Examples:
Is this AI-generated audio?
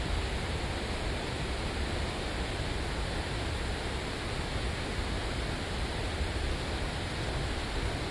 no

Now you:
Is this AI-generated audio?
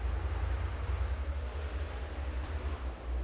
no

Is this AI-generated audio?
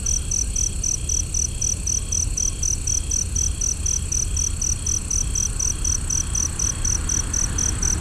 no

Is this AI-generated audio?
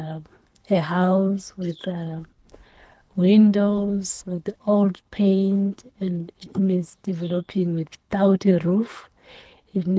yes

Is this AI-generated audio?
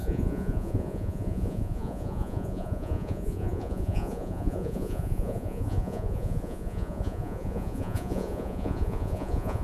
yes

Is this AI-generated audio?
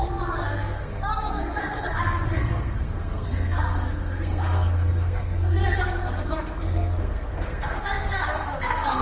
yes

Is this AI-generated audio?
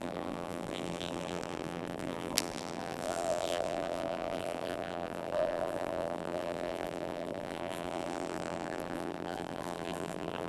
yes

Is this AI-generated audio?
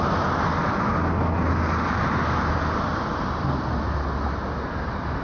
no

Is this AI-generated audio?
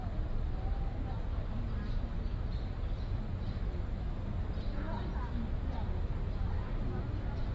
no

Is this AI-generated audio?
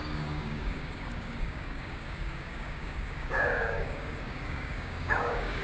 yes